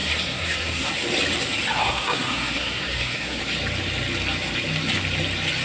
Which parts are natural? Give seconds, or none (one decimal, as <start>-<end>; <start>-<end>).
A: 0.9-1.8; 3.4-5.6

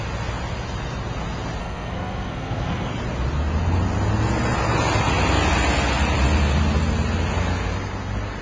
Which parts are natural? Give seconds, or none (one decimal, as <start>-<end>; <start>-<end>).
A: 0.0-1.6; 2.9-8.4

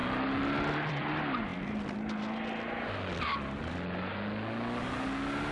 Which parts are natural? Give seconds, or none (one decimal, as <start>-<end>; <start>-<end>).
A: 0.0-5.5